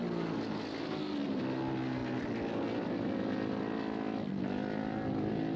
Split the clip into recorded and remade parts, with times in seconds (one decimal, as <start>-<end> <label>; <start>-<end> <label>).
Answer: 0.0-5.6 recorded